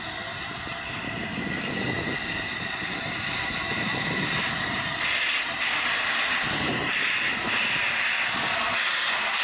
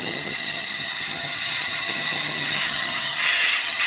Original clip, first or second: first